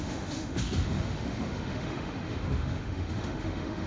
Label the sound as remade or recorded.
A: remade